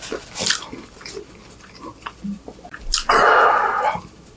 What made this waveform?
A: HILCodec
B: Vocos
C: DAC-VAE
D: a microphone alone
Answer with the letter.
D